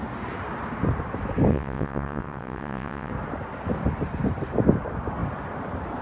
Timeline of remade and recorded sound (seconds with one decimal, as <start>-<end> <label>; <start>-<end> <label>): 0.0-1.5 recorded; 1.5-3.1 remade; 3.1-6.0 recorded